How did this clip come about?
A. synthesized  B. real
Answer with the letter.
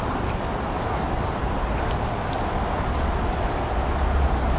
B